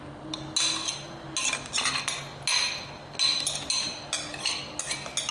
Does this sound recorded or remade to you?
recorded